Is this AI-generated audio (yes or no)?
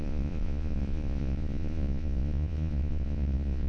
yes